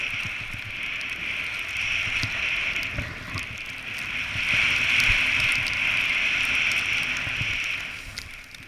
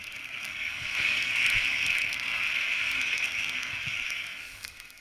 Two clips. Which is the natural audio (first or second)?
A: first